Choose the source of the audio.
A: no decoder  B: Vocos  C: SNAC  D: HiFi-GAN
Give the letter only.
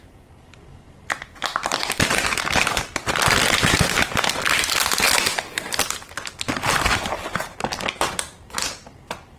A